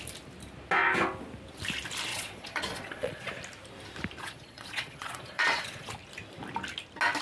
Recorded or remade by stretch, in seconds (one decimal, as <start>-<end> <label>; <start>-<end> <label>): 0.0-2.1 recorded; 2.1-3.3 remade; 3.3-4.2 recorded; 4.2-5.9 remade; 5.9-7.2 recorded